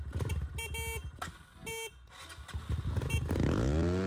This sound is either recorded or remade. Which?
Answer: recorded